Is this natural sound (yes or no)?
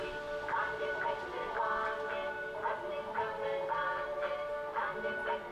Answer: yes